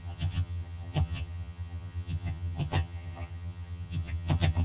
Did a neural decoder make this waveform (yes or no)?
yes